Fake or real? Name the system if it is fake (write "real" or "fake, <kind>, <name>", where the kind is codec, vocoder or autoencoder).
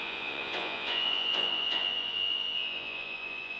fake, vocoder, Vocos